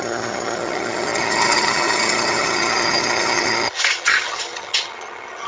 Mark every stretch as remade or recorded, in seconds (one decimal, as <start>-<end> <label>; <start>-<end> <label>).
0.0-5.5 remade